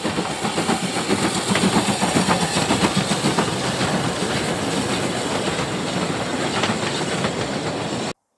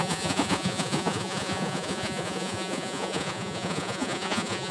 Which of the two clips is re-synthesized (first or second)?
second